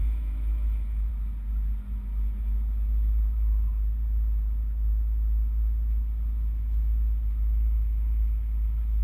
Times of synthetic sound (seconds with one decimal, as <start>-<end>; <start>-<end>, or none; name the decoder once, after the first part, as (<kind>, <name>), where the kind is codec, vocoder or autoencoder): 0.0-1.1 (autoencoder, DAC-VAE)